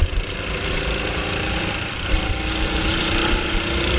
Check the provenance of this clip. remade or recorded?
remade